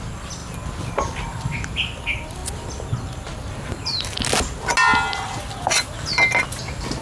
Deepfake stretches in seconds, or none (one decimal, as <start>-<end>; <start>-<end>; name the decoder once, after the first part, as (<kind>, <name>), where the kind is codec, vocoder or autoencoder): none